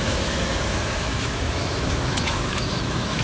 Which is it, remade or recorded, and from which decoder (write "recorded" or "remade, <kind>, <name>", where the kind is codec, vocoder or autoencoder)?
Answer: remade, autoencoder, DAC-VAE